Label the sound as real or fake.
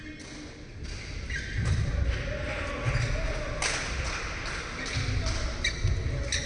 real